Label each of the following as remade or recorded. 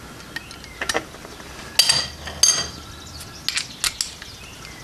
recorded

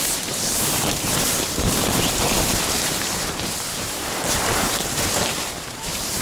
remade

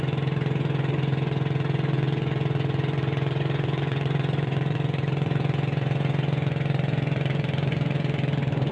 remade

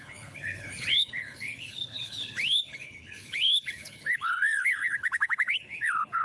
remade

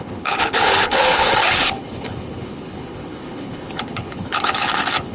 remade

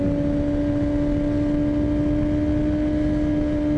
recorded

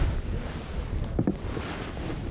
recorded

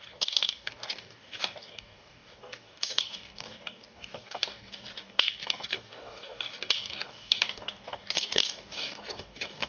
remade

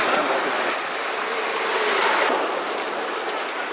recorded